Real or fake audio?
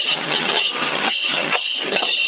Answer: fake